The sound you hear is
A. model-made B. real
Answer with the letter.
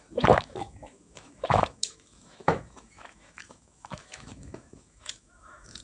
A